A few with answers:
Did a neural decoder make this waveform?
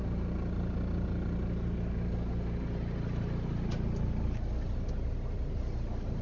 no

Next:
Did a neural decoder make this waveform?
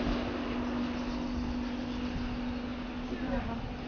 no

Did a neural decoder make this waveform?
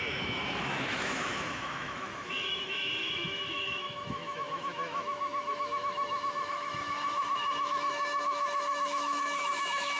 yes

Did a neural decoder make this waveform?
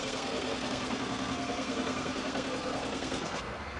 yes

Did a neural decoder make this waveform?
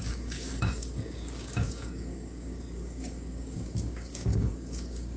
yes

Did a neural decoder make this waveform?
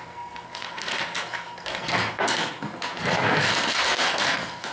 yes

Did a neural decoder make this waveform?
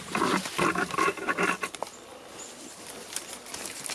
no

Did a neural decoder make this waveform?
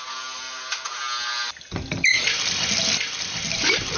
no